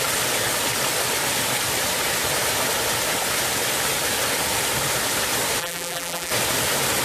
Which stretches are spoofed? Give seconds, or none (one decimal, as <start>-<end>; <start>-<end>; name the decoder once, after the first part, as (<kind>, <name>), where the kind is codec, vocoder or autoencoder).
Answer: 5.6-6.3 (vocoder, BigVGAN v2)